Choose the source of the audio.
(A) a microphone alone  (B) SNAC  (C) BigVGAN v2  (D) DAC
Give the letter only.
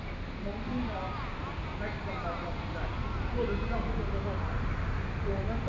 A